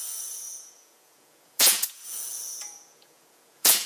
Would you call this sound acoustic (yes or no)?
no